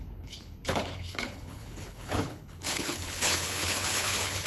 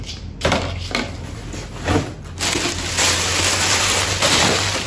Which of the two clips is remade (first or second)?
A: first